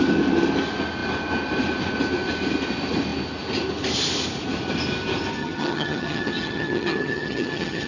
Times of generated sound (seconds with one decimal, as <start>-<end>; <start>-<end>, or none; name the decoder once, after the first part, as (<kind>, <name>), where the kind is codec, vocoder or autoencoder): 5.4-7.9 (vocoder, HiFi-GAN)